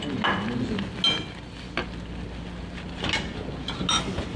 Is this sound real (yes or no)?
yes